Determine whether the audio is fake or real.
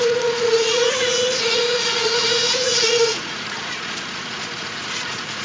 fake